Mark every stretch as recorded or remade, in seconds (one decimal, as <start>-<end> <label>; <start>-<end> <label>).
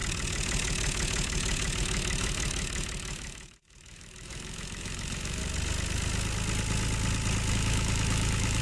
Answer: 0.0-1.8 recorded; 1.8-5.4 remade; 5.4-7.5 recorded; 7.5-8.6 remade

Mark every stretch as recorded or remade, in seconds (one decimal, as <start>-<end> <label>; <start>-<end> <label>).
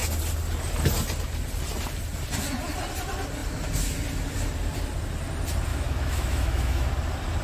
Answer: 0.0-5.7 recorded; 5.7-6.9 remade; 6.9-7.4 recorded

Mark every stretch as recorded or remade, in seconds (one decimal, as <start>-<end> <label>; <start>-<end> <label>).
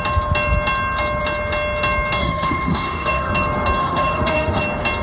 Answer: 0.0-2.2 recorded; 2.2-3.3 remade; 3.3-3.8 recorded; 3.8-4.6 remade; 4.6-5.0 recorded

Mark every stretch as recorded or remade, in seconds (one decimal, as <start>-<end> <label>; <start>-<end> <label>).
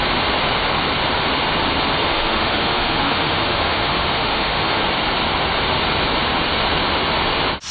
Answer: 0.0-2.0 recorded; 2.0-4.8 remade; 4.8-7.7 recorded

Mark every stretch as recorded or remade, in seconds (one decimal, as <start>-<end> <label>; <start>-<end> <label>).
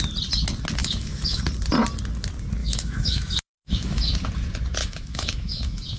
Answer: 0.0-0.8 recorded; 0.8-1.4 remade; 1.4-2.6 recorded; 2.6-4.0 remade; 4.0-4.8 recorded; 4.8-6.0 remade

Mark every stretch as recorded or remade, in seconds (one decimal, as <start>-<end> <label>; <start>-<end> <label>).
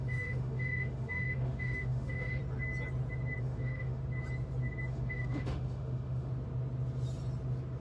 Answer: 0.0-2.4 remade; 2.4-3.4 recorded; 3.4-4.0 remade; 4.0-4.9 recorded; 4.9-6.3 remade; 6.3-7.8 recorded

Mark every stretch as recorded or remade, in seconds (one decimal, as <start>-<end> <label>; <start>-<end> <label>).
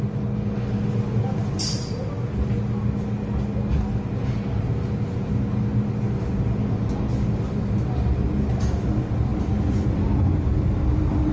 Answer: 0.0-11.3 recorded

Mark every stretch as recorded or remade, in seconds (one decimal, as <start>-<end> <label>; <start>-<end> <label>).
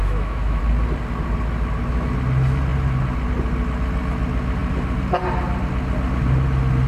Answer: 0.0-0.6 remade; 0.6-6.9 recorded